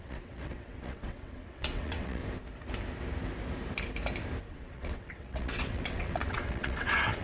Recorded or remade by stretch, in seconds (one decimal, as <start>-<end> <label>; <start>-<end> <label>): 0.0-2.2 remade; 2.2-4.5 recorded; 4.5-7.2 remade

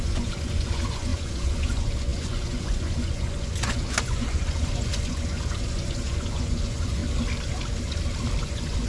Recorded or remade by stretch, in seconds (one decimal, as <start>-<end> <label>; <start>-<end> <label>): 0.0-7.0 remade; 7.0-8.4 recorded; 8.4-8.9 remade

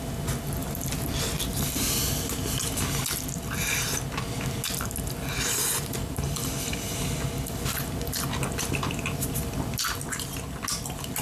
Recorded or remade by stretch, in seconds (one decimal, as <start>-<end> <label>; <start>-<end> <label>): 0.0-11.2 recorded